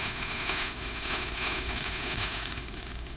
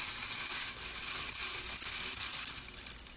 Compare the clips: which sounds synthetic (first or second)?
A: first